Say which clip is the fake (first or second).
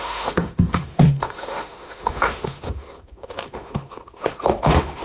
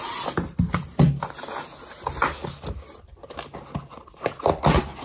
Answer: first